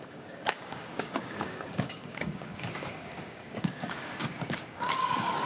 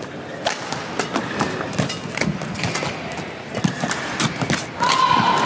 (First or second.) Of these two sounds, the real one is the second